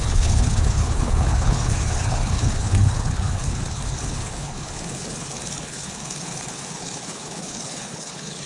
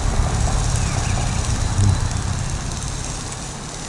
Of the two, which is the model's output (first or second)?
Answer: first